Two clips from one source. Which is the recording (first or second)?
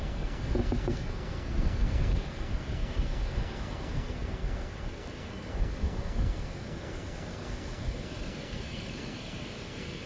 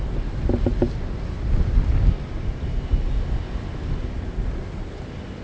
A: second